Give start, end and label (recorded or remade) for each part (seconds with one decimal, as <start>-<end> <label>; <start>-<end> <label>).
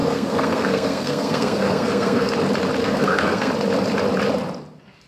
0.0-2.3 remade; 2.3-2.8 recorded; 2.8-3.5 remade; 3.5-5.1 recorded